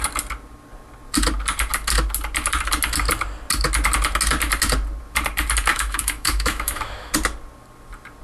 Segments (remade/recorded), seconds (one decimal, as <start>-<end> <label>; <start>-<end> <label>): 0.0-5.7 recorded; 5.7-7.1 remade; 7.1-8.2 recorded